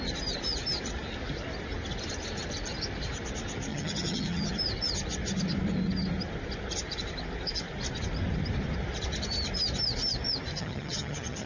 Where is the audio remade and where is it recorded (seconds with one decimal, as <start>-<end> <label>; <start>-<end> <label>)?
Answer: 0.0-3.7 recorded; 3.7-4.5 remade; 4.5-10.5 recorded; 10.5-11.5 remade